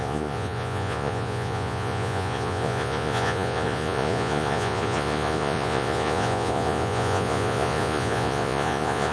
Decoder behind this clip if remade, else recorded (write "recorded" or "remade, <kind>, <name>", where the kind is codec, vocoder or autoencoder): remade, vocoder, Vocos